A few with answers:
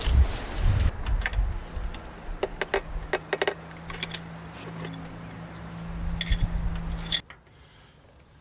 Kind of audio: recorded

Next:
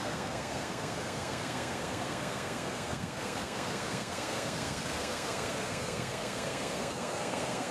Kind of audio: remade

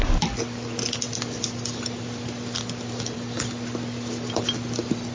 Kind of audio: recorded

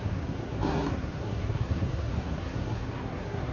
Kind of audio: remade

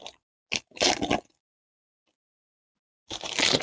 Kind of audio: recorded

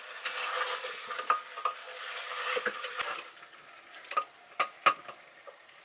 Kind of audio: recorded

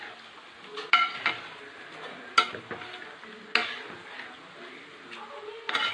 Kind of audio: recorded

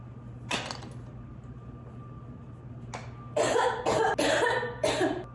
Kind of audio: recorded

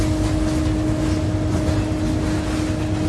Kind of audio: recorded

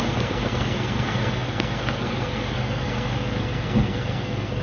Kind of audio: remade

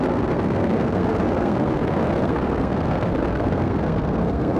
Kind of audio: remade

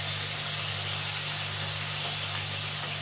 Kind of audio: recorded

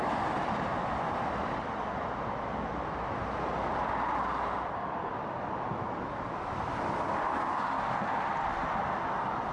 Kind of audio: recorded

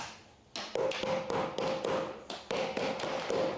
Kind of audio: recorded